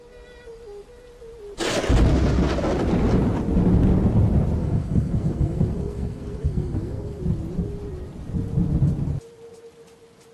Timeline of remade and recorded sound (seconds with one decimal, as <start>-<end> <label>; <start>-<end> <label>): 0.0-4.6 recorded; 4.6-7.2 remade; 7.2-10.3 recorded